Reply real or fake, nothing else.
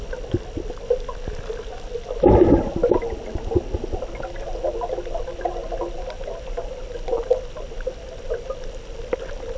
real